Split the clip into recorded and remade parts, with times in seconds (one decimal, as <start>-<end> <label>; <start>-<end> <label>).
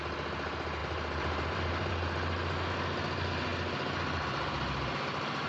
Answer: 0.0-0.8 recorded; 0.8-1.9 remade; 1.9-5.5 recorded